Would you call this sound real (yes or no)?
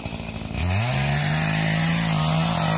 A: yes